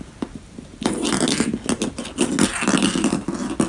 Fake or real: real